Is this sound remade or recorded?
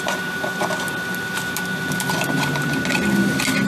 recorded